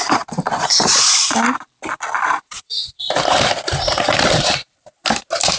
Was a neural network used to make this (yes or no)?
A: no